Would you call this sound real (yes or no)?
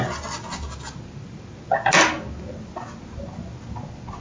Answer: yes